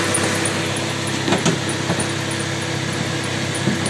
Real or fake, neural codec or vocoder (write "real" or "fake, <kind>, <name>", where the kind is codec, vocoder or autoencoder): real